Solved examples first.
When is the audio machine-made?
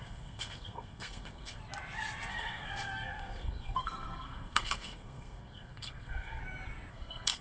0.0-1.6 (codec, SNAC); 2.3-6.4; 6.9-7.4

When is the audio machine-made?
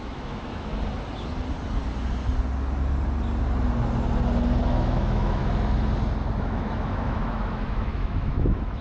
0.0-0.7 (autoencoder, DAC-VAE); 4.7-5.4; 6.4-8.8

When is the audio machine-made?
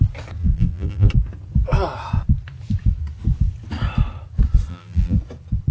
0.4-1.1 (vocoder, BigVGAN v2); 4.7-5.2